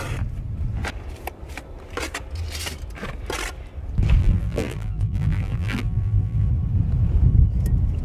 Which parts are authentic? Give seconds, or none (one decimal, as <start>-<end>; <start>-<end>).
0.0-4.2; 6.5-8.0